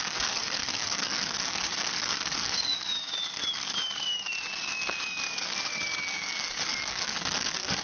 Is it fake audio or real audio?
fake